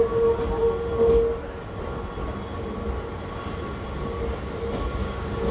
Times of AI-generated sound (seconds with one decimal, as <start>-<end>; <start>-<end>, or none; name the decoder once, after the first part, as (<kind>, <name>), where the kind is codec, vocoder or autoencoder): 5.0-5.5 (codec, DAC)